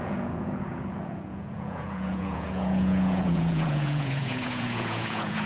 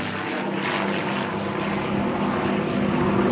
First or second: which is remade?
first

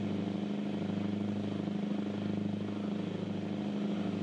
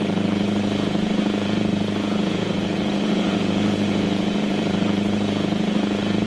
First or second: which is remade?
second